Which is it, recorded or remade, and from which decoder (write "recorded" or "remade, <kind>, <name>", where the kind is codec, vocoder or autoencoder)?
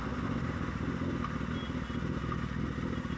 recorded